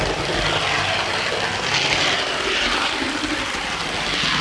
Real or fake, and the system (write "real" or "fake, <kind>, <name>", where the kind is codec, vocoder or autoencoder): real